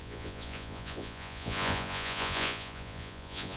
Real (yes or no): no